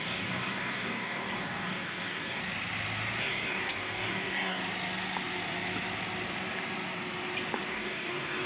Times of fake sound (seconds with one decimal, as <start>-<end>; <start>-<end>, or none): 0.0-2.4; 3.2-4.6; 7.7-8.5